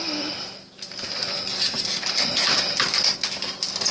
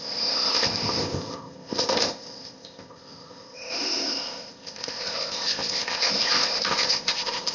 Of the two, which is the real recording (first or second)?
first